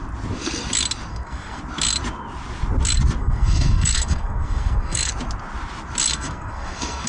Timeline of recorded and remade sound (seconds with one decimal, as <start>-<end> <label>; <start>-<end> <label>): 0.0-1.1 recorded; 1.1-1.6 remade; 1.6-3.2 recorded; 3.2-5.1 remade; 5.1-6.1 recorded; 6.1-7.1 remade